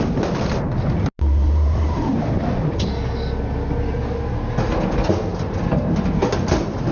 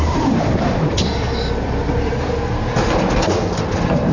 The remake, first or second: second